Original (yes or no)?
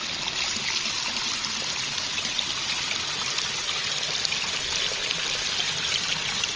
yes